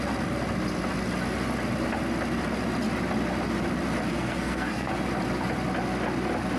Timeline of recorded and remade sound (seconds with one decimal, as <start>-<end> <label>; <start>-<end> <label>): 0.0-4.1 recorded; 4.1-4.9 remade; 4.9-6.6 recorded